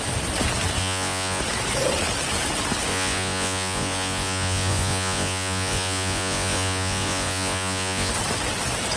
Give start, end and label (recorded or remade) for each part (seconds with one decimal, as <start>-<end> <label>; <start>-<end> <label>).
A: 0.0-0.8 recorded; 0.8-1.4 remade; 1.4-2.9 recorded; 2.9-8.1 remade; 8.1-9.0 recorded